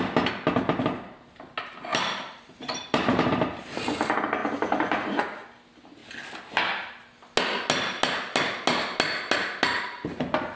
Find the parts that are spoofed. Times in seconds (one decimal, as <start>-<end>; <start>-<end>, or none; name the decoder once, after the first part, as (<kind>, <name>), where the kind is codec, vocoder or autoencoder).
1.9-3.6 (vocoder, BigVGAN v2); 4.4-5.6